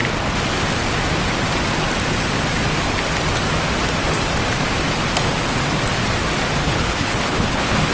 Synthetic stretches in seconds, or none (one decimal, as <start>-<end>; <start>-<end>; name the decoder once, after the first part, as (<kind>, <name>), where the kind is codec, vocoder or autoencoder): 6.6-7.9 (codec, HILCodec)